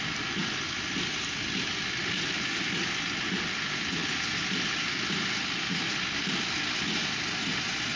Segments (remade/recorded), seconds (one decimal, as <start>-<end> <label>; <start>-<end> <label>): 0.0-8.0 recorded